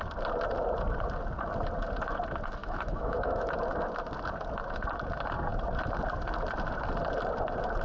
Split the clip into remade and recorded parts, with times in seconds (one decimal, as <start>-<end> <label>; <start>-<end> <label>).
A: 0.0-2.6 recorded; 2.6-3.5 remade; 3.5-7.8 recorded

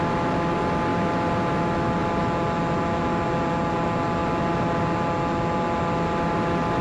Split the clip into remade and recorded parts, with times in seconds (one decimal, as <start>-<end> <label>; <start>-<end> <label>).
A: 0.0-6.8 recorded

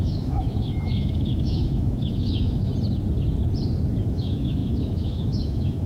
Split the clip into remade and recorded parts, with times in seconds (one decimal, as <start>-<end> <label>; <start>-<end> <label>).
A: 0.0-2.7 remade; 2.7-4.0 recorded; 4.0-5.9 remade

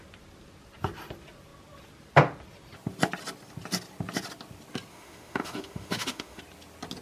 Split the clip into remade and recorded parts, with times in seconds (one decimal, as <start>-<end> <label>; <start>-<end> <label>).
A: 0.0-4.9 recorded; 4.9-6.4 remade; 6.4-7.0 recorded